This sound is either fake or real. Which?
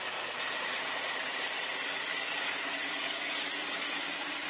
real